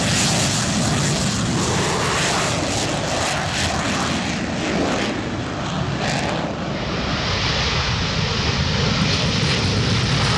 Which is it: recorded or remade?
recorded